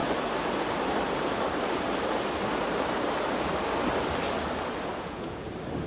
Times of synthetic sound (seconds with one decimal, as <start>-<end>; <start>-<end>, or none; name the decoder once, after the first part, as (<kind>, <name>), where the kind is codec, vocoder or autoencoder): 4.9-5.5 (vocoder, Vocos)